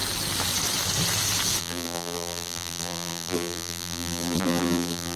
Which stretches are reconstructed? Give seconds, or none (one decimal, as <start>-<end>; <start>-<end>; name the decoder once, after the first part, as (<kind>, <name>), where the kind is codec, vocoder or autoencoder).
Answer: 1.6-5.2 (vocoder, BigVGAN v2)